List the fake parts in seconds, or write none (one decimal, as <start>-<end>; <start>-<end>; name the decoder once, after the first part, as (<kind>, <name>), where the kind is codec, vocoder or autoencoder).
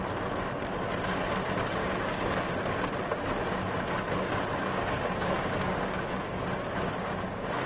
1.8-2.4 (codec, DAC); 4.5-7.7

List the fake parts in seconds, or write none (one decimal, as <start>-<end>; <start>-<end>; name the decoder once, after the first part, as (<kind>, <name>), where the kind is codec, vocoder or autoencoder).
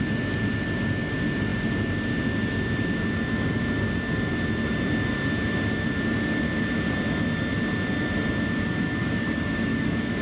9.0-10.2 (codec, DAC)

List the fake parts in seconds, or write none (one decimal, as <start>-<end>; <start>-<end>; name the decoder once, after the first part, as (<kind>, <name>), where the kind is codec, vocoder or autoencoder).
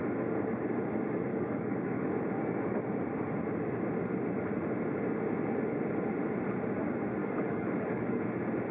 1.3-2.1 (codec, DAC); 7.2-8.2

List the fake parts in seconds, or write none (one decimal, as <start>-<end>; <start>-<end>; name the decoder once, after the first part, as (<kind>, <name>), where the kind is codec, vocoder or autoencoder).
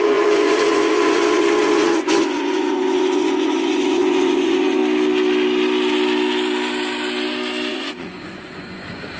0.0-4.8 (vocoder, Vocos); 7.7-9.2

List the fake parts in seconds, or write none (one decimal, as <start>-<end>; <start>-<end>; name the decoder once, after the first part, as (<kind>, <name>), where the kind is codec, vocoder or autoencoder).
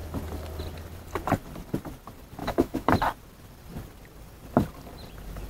2.4-2.9 (autoencoder, DAC-VAE)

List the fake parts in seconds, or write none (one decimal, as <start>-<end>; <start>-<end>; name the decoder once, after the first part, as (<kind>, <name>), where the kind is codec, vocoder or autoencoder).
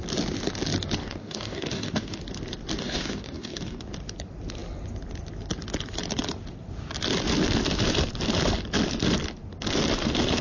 1.0-2.2 (codec, DAC); 2.8-3.8